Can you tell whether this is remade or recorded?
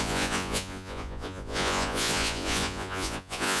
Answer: remade